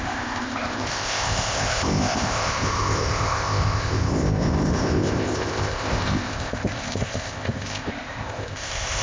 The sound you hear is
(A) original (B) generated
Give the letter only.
B